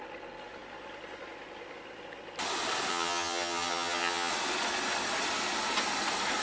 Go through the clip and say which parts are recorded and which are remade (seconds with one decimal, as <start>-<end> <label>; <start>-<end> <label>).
0.0-2.9 recorded; 2.9-4.3 remade; 4.3-6.4 recorded